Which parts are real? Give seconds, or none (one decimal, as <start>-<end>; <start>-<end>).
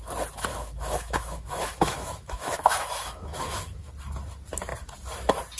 0.0-0.5; 3.9-5.6